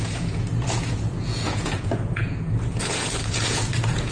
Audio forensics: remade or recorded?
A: remade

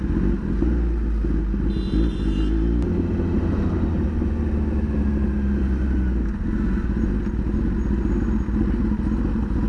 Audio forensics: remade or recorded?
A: recorded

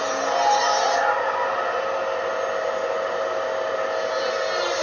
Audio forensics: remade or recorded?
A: recorded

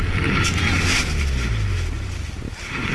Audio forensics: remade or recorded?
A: recorded